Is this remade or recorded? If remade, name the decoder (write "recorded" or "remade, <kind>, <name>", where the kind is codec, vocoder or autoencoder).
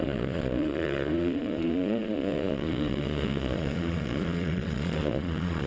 remade, vocoder, Vocos